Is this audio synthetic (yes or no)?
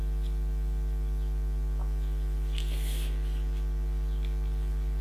no